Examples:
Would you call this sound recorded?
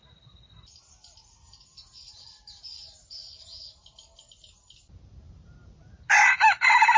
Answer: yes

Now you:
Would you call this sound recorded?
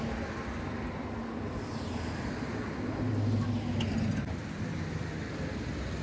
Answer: yes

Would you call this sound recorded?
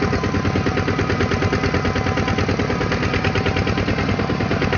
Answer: yes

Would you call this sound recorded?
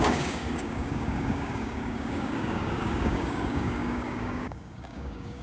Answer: no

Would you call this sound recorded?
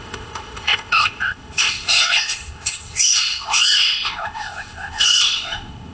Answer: no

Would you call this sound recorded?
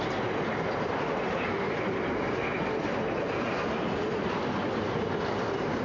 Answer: yes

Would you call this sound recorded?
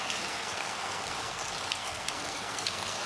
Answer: no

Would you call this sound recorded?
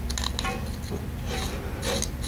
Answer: yes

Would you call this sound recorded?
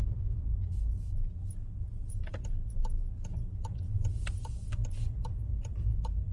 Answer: yes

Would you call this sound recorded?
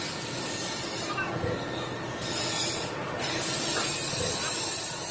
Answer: yes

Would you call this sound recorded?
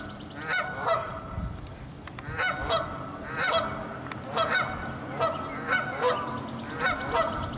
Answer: yes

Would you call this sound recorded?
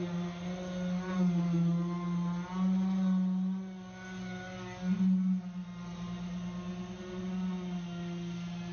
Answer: yes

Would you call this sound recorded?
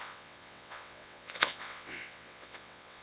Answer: no